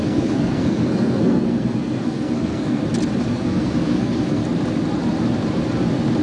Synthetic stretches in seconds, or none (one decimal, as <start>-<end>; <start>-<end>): 0.0-2.8; 3.3-4.4